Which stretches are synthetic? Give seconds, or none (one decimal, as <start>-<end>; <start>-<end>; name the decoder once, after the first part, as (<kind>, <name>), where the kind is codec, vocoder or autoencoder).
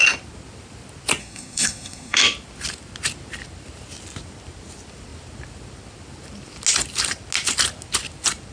1.2-2.2 (codec, SNAC)